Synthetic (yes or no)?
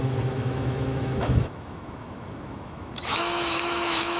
yes